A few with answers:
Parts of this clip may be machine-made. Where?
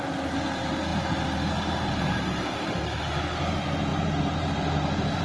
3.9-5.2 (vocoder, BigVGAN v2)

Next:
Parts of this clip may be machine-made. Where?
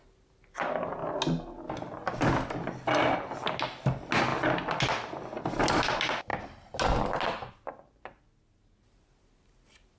none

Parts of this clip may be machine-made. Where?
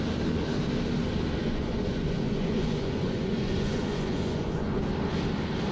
1.4-4.8 (vocoder, Vocos)